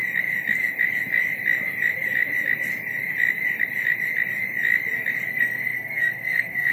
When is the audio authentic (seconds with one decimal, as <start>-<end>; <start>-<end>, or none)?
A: 0.0-5.3